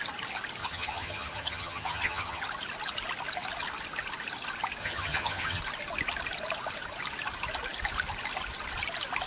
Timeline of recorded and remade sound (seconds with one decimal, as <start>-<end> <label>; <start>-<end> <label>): 0.0-0.6 recorded; 0.6-2.4 remade; 2.4-4.8 recorded; 4.8-5.6 remade; 5.6-9.3 recorded